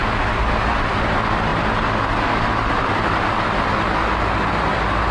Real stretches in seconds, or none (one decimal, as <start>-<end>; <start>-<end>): 0.0-5.1